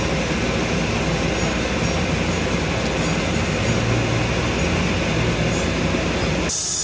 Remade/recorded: recorded